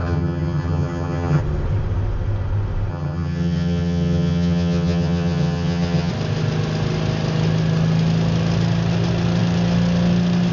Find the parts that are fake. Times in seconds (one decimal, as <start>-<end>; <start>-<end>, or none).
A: 0.0-1.4; 2.9-6.1